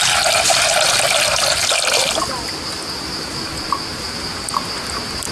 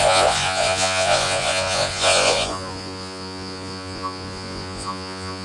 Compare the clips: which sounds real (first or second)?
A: first